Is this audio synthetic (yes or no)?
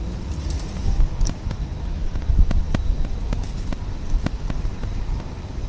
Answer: no